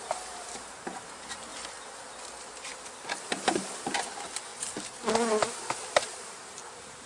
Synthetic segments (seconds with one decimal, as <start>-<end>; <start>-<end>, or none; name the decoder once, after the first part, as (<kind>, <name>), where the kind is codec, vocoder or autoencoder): 0.0-1.5 (vocoder, BigVGAN v2); 3.2-4.5; 6.2-7.1